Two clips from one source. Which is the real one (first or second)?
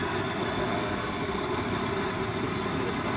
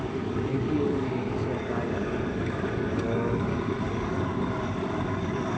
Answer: first